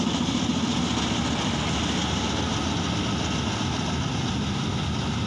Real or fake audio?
real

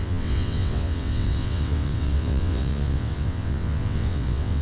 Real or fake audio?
fake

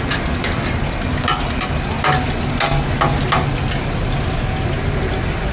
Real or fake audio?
real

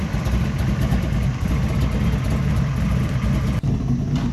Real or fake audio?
real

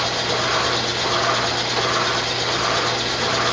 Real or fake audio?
real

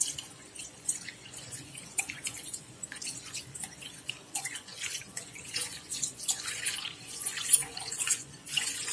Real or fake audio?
fake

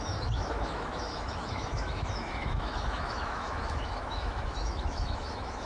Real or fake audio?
fake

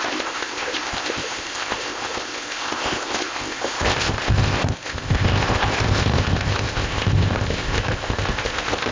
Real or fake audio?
fake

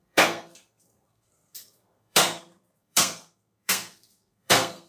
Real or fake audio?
fake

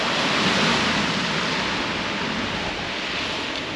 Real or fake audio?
real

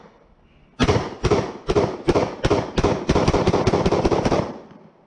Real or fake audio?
real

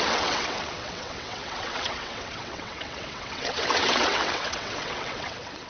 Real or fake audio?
fake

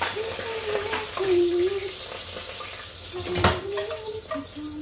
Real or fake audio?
fake